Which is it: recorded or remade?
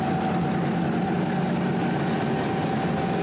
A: recorded